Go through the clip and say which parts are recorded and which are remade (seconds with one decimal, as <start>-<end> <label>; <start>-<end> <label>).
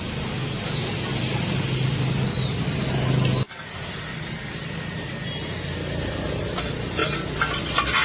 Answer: 0.0-8.0 recorded